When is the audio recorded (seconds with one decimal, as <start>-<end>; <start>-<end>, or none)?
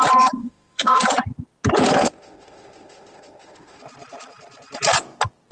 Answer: 0.0-0.4; 1.0-2.0; 3.8-5.5